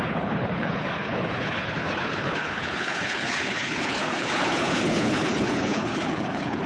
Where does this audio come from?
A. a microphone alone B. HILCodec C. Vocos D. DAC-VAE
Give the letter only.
B